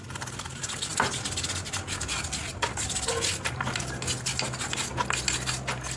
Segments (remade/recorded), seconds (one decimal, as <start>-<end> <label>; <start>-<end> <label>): 0.0-6.0 recorded